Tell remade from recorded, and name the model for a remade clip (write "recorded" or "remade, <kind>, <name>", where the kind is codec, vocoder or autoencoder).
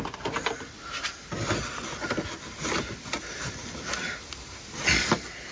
recorded